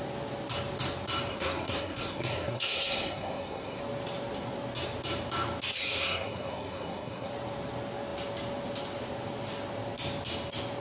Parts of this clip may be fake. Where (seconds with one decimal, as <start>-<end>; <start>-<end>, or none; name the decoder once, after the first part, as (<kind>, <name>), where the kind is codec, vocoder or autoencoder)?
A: 1.3-3.8 (codec, SNAC); 5.8-7.3